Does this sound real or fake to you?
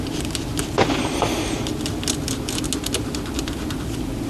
real